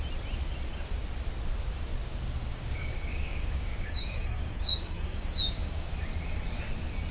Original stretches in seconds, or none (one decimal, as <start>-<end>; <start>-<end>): 0.0-2.4; 5.9-7.1